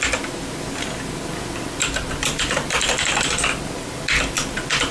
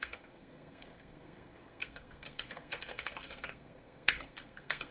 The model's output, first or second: second